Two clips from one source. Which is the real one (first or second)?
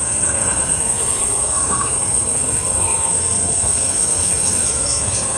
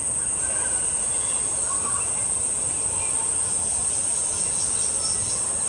second